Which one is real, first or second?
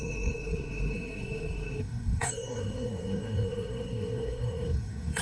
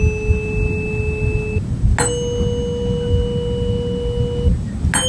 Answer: second